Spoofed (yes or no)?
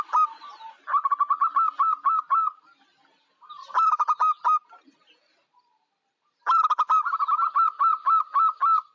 no